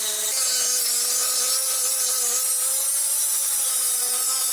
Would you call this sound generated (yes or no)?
no